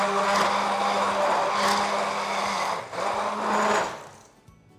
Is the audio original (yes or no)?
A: yes